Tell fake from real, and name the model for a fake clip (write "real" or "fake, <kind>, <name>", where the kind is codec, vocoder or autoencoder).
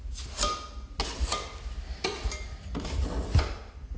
real